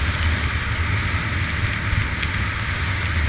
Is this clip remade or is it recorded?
recorded